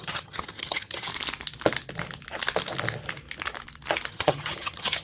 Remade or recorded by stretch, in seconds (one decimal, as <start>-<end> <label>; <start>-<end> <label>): 0.0-1.1 remade; 1.1-4.1 recorded; 4.1-5.0 remade